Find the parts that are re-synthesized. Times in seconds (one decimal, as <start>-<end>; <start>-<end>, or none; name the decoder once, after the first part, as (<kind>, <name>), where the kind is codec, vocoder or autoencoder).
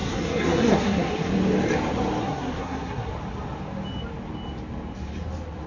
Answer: 0.0-1.3 (codec, SNAC); 2.2-3.1